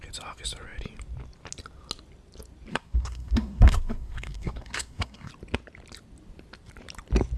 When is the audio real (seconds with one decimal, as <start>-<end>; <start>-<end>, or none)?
0.0-2.7; 5.3-7.4